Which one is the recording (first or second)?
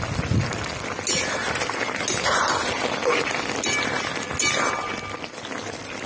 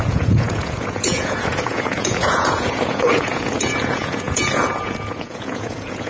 first